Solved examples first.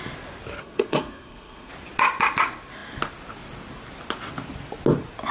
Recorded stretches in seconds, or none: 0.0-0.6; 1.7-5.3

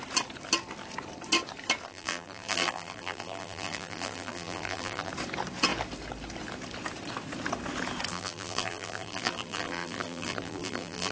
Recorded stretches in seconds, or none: 0.0-1.9; 5.1-8.1

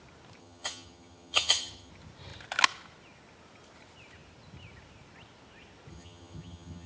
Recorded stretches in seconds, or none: 0.0-0.4; 1.9-5.9